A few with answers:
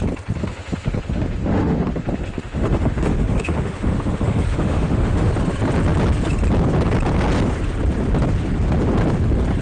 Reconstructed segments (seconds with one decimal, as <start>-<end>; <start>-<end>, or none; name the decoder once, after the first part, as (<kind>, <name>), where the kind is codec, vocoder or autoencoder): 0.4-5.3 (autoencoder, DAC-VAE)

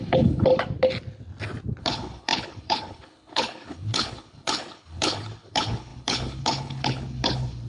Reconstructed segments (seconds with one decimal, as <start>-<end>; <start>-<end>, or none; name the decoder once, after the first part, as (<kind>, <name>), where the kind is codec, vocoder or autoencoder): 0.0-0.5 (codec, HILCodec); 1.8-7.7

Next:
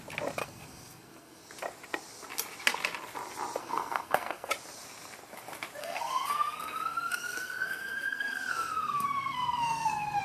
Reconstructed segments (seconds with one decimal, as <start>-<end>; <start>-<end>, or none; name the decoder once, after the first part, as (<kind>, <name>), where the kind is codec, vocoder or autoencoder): 0.4-1.5 (codec, SNAC); 3.6-4.5; 5.8-10.2

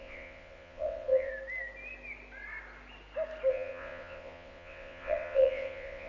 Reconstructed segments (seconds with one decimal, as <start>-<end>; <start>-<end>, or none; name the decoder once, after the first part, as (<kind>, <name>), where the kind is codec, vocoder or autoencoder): 0.0-1.3 (vocoder, WaveNeXt); 3.5-6.1